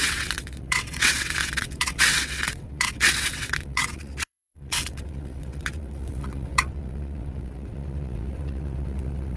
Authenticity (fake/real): fake